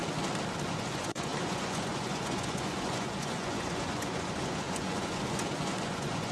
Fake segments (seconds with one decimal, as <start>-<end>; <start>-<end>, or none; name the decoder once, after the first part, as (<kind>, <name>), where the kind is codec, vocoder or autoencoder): 0.7-6.3 (vocoder, Vocos)